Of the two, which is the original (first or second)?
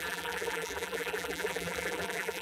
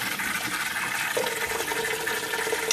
second